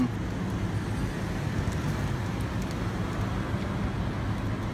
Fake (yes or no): no